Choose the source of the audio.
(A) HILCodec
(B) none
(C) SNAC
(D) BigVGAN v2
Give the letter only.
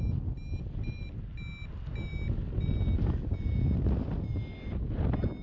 B